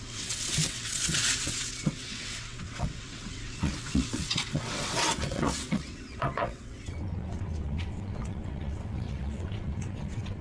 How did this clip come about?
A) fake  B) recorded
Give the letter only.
A